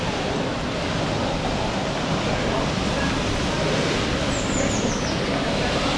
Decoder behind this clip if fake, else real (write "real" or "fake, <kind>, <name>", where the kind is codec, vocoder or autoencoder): real